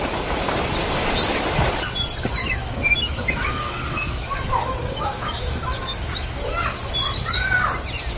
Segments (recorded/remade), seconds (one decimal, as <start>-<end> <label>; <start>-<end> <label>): 0.0-2.4 recorded; 2.4-6.6 remade; 6.6-8.2 recorded